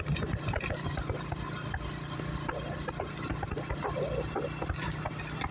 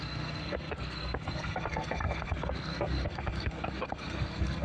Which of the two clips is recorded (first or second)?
first